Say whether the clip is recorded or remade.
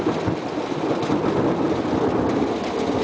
recorded